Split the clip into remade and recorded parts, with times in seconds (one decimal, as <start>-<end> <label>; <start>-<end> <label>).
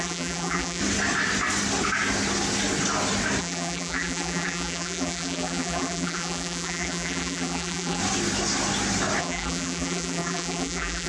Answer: 0.0-0.8 remade; 0.8-3.4 recorded; 3.4-8.0 remade; 8.0-9.2 recorded; 9.2-11.1 remade